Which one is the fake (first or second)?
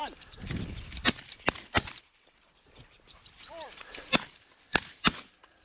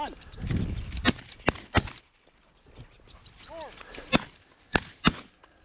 first